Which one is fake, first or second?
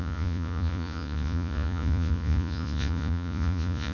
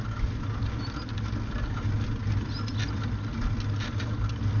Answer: first